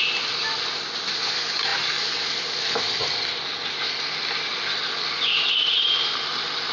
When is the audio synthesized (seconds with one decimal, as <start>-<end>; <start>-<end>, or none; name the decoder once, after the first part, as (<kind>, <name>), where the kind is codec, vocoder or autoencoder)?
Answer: none